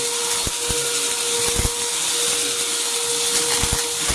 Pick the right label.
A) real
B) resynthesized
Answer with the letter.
A